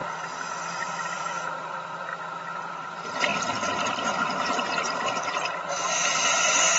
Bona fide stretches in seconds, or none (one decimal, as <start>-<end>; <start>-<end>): 0.0-0.8; 2.1-2.6; 3.3-4.5